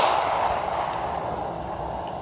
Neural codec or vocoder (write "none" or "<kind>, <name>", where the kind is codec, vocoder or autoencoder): none